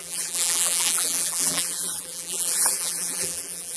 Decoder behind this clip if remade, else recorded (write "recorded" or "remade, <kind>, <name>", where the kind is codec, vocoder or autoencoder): remade, vocoder, BigVGAN v2